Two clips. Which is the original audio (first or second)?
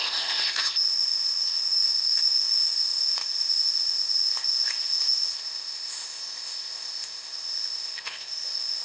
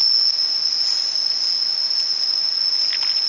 second